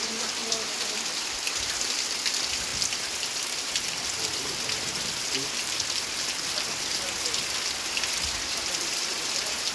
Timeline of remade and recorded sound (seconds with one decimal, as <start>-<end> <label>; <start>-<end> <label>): 0.0-0.4 recorded; 0.4-1.9 remade; 1.9-4.3 recorded; 4.3-6.1 remade; 6.1-9.7 recorded

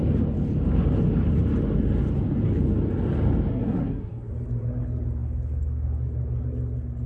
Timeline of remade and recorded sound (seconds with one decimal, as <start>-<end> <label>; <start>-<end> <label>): 0.0-3.5 recorded; 3.5-4.3 remade; 4.3-7.1 recorded